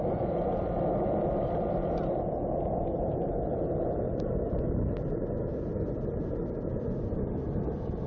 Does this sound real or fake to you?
real